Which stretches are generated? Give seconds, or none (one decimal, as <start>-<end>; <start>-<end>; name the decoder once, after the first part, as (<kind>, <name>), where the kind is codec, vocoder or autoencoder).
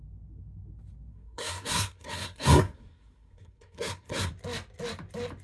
1.1-4.3 (codec, SNAC)